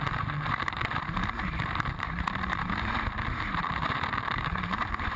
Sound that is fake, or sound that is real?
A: fake